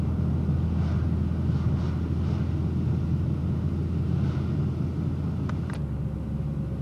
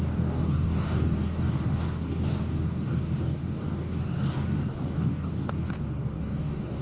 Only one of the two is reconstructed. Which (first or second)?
second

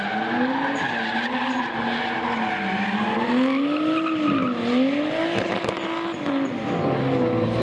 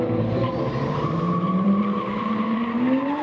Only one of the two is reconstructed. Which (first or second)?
second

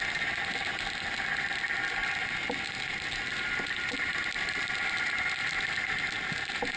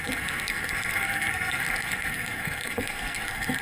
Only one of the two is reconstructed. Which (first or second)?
second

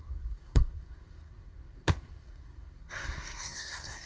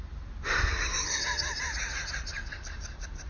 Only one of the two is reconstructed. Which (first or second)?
first